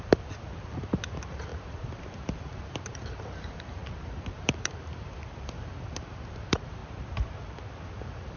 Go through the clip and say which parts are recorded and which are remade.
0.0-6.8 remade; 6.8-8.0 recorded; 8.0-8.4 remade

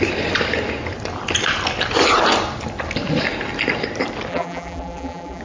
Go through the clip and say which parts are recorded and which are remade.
0.0-4.3 recorded; 4.3-5.4 remade

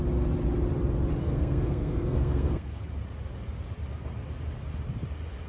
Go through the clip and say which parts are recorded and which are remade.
0.0-1.2 recorded; 1.2-2.8 remade; 2.8-5.5 recorded

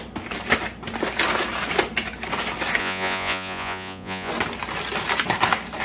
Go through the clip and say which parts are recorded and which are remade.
0.0-2.8 recorded; 2.8-4.3 remade; 4.3-5.8 recorded

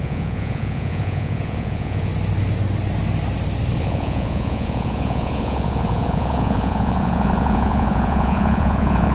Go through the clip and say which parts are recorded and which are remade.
0.0-2.1 remade; 2.1-3.8 recorded; 3.8-9.1 remade

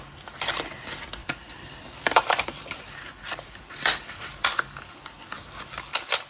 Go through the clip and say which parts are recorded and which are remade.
0.0-1.2 recorded; 1.2-5.0 remade; 5.0-6.3 recorded